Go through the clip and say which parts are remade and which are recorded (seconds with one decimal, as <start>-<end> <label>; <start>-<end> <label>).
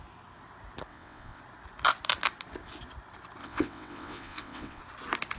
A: 0.0-0.9 recorded; 0.9-1.4 remade; 1.4-3.4 recorded; 3.4-4.8 remade; 4.8-5.4 recorded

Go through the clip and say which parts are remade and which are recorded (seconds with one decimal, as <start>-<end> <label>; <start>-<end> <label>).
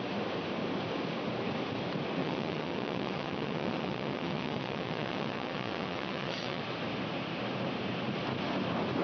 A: 0.0-2.2 recorded; 2.2-6.6 remade; 6.6-9.0 recorded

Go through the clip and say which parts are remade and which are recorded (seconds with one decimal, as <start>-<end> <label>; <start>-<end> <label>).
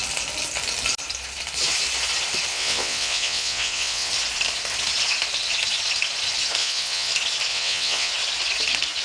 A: 0.0-2.5 recorded; 2.5-4.1 remade; 4.1-6.6 recorded; 6.6-7.1 remade; 7.1-7.5 recorded; 7.5-8.1 remade; 8.1-9.0 recorded